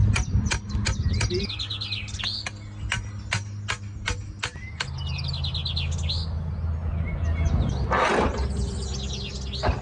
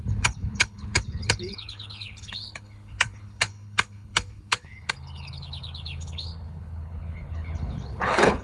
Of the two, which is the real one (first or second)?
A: first